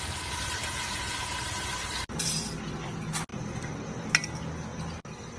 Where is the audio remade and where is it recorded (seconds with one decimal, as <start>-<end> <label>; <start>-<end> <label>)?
0.0-0.6 recorded; 0.6-1.3 remade; 1.3-5.4 recorded